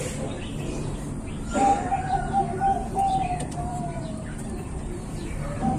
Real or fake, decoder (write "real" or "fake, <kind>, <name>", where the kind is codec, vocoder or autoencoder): fake, vocoder, BigVGAN v2